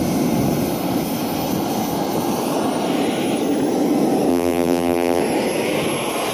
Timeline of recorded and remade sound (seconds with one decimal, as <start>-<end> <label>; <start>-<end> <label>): 0.0-4.3 recorded; 4.3-5.2 remade; 5.2-6.3 recorded